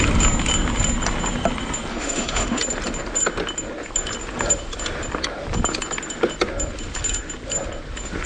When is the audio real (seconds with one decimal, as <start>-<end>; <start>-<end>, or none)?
0.0-1.9; 2.6-8.3

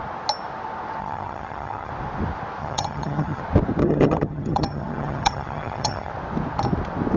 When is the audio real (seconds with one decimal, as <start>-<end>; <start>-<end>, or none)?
0.0-1.0; 1.9-2.6; 3.4-3.8; 6.1-7.2

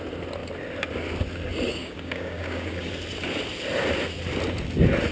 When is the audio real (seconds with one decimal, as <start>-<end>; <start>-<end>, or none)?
0.0-1.8; 2.9-5.1

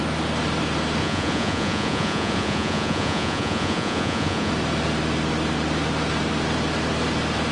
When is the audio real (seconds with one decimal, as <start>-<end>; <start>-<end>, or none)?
0.0-1.0; 4.5-7.5

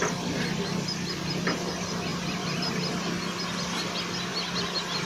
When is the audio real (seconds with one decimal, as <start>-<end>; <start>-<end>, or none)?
0.0-2.1; 2.9-5.1

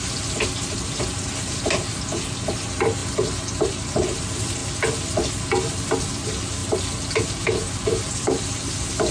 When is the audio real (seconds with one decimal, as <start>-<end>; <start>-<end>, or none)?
3.0-3.6; 6.6-7.2